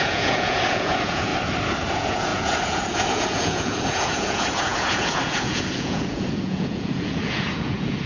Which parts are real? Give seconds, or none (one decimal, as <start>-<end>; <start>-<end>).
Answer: 1.3-1.9